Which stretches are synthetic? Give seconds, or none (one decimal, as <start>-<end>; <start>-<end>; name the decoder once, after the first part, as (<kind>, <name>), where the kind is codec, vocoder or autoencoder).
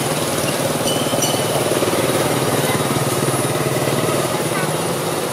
1.1-4.3 (vocoder, BigVGAN v2)